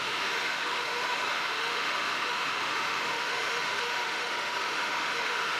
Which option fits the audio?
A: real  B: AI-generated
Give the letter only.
B